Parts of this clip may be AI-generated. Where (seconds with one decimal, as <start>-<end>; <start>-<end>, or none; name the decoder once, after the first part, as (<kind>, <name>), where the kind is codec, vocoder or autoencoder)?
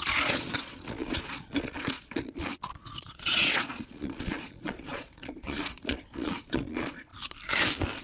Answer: 0.0-7.1 (vocoder, Vocos)